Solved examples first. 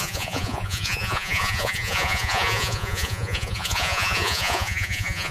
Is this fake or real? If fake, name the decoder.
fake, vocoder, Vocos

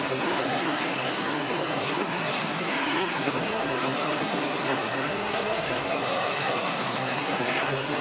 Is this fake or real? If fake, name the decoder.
fake, codec, SNAC